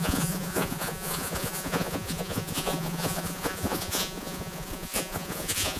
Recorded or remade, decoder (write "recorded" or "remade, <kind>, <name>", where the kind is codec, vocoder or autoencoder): remade, vocoder, Vocos